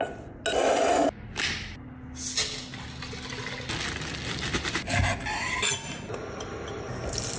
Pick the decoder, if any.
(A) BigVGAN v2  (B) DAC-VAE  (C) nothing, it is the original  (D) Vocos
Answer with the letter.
C